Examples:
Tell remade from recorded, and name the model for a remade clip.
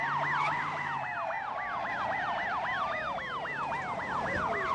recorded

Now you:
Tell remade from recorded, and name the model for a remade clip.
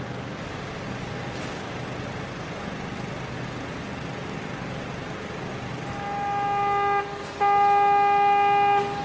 recorded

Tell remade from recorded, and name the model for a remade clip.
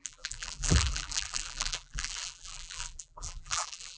remade, vocoder, BigVGAN v2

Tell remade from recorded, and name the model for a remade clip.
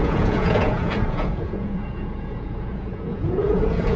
remade, vocoder, Vocos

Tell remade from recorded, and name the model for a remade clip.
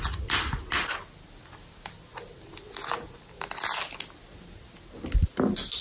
recorded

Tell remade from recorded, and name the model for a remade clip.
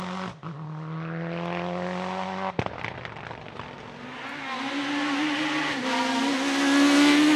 recorded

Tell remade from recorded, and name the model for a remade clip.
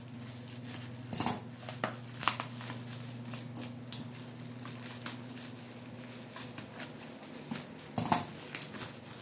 recorded